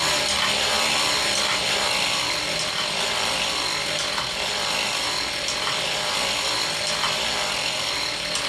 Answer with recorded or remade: recorded